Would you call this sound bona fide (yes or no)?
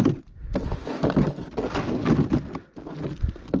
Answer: yes